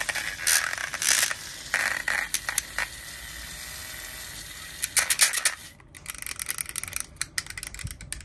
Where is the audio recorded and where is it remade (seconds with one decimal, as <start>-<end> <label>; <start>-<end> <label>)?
0.0-8.2 recorded